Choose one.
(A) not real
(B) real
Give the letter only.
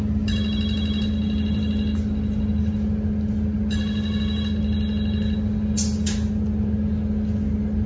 B